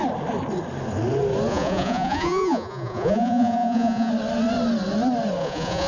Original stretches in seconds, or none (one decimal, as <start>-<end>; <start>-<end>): 0.0-1.5; 4.1-5.4